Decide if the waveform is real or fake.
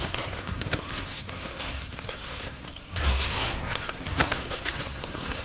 fake